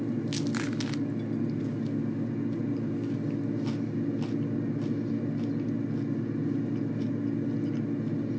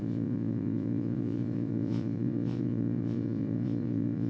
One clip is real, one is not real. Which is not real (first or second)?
second